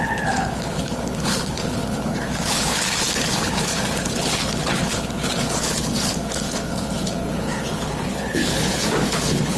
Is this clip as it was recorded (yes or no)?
no